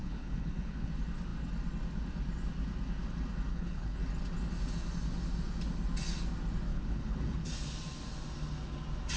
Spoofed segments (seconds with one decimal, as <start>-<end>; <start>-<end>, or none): 0.0-0.9; 3.5-4.0; 6.7-7.5